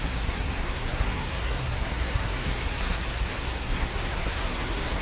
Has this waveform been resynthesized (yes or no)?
yes